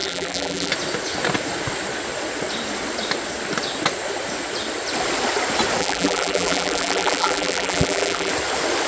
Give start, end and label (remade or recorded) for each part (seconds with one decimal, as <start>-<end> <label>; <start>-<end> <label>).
0.0-0.7 remade; 0.7-5.8 recorded; 5.8-8.3 remade; 8.3-8.9 recorded